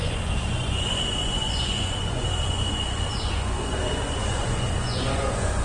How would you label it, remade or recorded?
remade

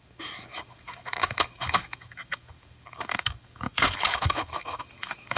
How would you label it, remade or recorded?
remade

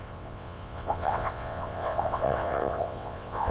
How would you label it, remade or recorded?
remade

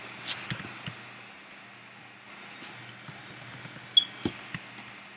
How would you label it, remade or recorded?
recorded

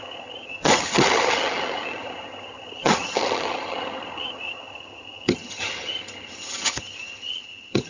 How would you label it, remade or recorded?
remade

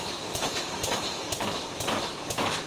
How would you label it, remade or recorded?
remade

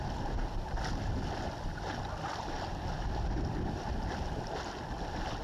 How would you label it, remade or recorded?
recorded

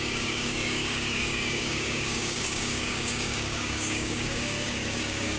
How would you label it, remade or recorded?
remade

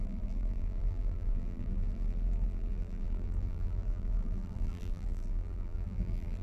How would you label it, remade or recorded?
remade